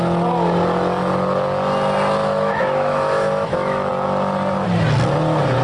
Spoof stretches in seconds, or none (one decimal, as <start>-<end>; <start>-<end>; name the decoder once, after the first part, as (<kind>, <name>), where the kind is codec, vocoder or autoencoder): 2.2-3.9 (autoencoder, DAC-VAE)